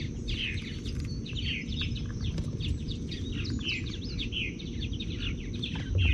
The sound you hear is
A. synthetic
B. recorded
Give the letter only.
A